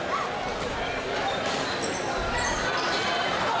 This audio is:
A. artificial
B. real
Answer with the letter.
B